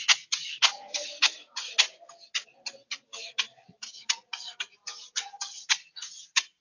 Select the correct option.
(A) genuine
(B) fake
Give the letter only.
A